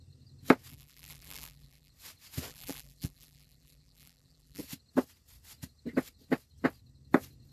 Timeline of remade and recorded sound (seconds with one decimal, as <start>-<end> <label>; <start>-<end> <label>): 0.0-0.7 recorded; 0.7-1.9 remade; 1.9-2.5 recorded; 2.5-4.6 remade; 4.6-7.5 recorded

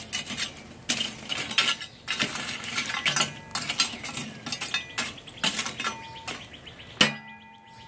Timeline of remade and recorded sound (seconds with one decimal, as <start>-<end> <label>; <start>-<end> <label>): 0.0-7.9 recorded